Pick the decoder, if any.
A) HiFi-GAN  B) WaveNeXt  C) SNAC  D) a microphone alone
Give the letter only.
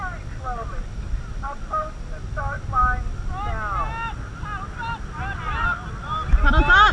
D